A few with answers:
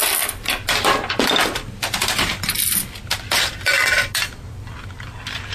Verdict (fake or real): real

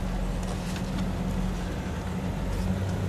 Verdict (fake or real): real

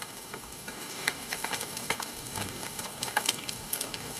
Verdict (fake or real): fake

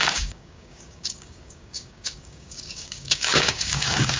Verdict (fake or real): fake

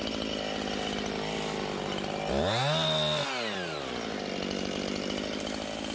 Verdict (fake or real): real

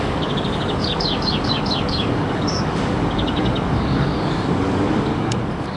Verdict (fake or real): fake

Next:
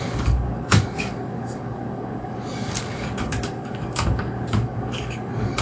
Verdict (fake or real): fake